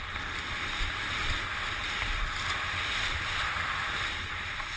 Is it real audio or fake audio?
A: fake